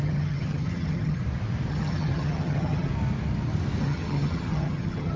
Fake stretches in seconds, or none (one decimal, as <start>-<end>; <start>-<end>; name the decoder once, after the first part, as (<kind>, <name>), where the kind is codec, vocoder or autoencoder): 0.0-1.2 (vocoder, HiFi-GAN); 1.7-2.9; 3.8-5.2